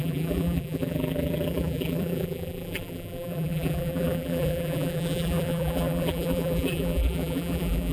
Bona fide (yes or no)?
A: no